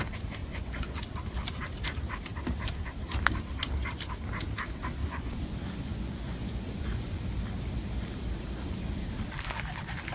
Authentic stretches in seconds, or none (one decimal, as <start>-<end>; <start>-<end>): 0.0-0.4; 1.0-5.0; 7.2-10.1

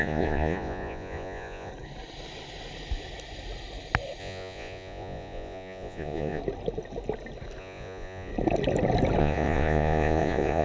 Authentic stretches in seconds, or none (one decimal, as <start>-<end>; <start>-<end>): 1.7-4.2; 6.4-7.6; 8.3-9.2

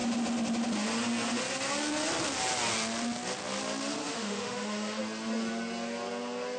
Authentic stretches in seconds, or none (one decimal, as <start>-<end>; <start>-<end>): 0.0-4.0; 5.0-6.6

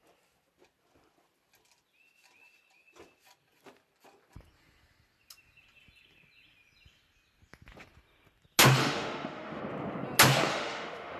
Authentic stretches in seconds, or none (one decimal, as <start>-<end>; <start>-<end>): 0.0-8.8; 9.6-10.5

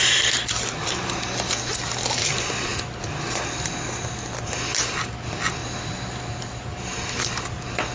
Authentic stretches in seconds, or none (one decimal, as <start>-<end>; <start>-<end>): 0.0-7.9

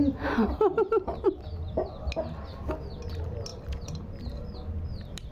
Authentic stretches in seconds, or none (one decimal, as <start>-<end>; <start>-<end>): 0.0-0.7; 1.5-3.5; 4.1-5.3